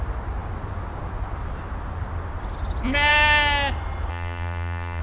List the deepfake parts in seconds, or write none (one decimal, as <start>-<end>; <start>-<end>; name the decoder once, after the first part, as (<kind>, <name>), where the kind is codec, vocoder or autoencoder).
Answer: 4.1-5.0 (vocoder, BigVGAN v2)